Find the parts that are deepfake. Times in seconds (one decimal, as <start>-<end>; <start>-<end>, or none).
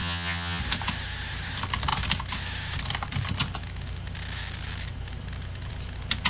0.0-0.6